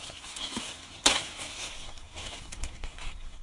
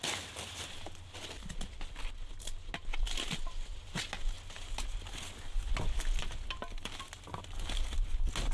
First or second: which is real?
second